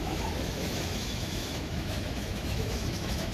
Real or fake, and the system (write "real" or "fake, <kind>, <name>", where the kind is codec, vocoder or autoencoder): fake, autoencoder, DAC-VAE